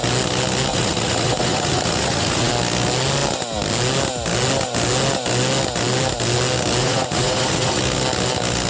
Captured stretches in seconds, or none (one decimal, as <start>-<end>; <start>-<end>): 0.0-0.7; 2.5-6.8; 7.8-8.7